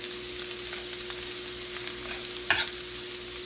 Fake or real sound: real